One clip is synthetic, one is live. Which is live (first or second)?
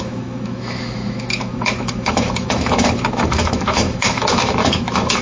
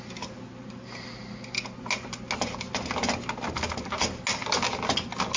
second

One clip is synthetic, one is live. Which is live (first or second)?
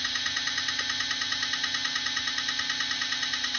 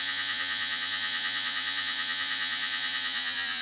first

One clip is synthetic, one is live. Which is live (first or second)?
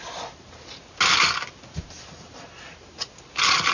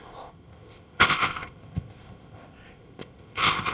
first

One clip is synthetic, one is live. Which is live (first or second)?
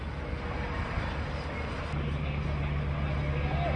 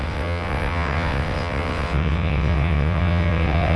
first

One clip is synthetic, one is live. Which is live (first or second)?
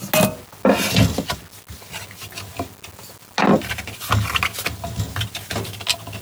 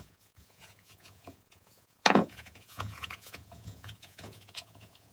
first